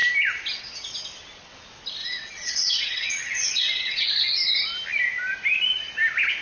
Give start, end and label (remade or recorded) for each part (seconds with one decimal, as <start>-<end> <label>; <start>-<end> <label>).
0.0-2.0 recorded; 2.0-4.1 remade; 4.1-6.4 recorded